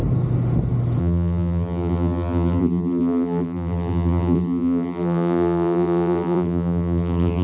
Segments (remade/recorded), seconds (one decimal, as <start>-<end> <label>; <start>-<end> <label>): 0.0-1.0 recorded; 1.0-7.4 remade